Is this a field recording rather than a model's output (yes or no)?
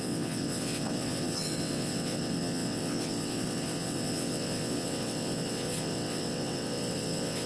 no